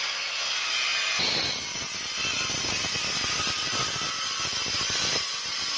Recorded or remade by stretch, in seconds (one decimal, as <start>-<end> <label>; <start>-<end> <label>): 0.0-5.8 recorded